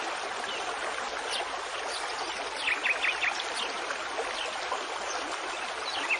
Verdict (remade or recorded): recorded